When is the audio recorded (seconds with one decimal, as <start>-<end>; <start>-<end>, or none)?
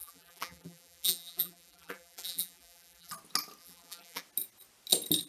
3.1-3.6; 4.2-5.3